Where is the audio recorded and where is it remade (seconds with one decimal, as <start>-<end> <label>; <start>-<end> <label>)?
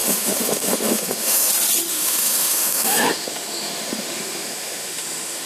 0.0-1.5 remade; 1.5-1.9 recorded; 1.9-5.5 remade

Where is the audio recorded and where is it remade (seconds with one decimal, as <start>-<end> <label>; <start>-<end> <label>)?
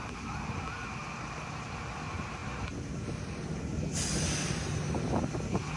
0.0-5.8 recorded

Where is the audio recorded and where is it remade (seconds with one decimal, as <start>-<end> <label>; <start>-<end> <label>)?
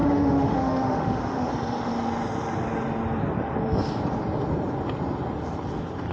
0.0-1.5 remade; 1.5-6.1 recorded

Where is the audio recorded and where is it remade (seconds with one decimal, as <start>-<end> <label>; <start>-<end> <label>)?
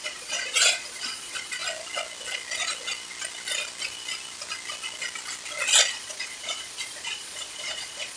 0.0-1.6 remade; 1.6-5.9 recorded; 5.9-8.2 remade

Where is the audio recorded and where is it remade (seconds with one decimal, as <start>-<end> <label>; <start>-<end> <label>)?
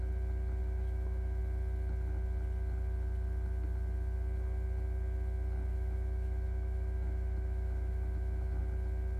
0.0-0.6 recorded; 0.6-1.4 remade; 1.4-5.7 recorded; 5.7-8.6 remade; 8.6-9.2 recorded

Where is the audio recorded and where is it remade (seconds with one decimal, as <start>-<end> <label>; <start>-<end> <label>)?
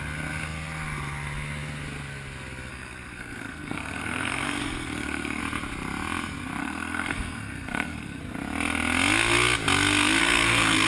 0.0-2.7 recorded; 2.7-5.4 remade; 5.4-6.6 recorded; 6.6-8.2 remade; 8.2-10.2 recorded; 10.2-10.9 remade